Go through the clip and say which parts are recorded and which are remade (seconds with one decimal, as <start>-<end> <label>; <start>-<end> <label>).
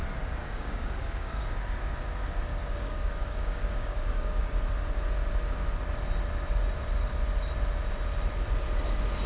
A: 0.0-0.4 recorded; 0.4-2.0 remade; 2.0-2.5 recorded; 2.5-4.4 remade; 4.4-9.3 recorded